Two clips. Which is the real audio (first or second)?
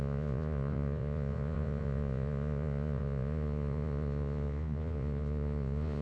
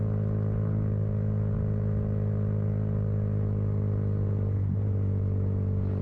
second